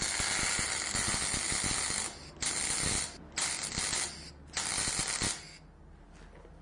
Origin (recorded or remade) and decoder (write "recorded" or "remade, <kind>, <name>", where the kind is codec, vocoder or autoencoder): recorded